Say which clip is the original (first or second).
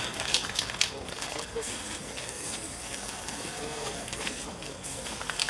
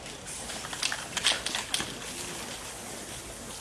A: second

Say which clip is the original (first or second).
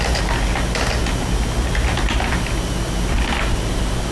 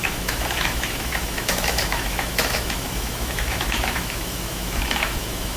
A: first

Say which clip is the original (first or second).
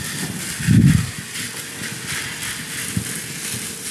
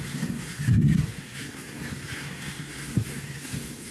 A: first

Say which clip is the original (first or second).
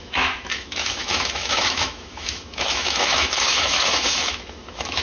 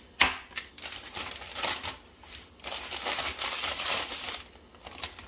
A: second